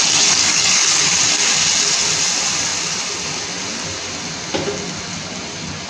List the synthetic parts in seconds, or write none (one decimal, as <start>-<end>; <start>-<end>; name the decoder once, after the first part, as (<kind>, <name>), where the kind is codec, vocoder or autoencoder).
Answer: 0.4-1.0 (codec, DAC)